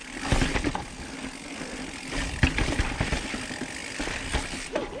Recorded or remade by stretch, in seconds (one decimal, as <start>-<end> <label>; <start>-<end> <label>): 0.0-5.0 recorded